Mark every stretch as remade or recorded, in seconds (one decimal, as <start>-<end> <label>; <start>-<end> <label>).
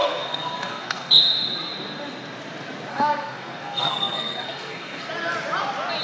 0.0-1.2 remade; 1.2-2.9 recorded; 2.9-5.1 remade; 5.1-6.0 recorded